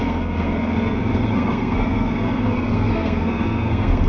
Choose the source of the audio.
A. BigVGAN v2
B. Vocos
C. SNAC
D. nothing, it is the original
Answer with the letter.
C